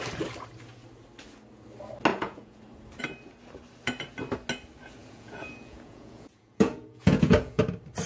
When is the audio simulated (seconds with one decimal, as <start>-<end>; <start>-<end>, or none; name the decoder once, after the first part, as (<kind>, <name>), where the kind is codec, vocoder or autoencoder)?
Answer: 2.1-2.6 (vocoder, Vocos); 5.0-7.6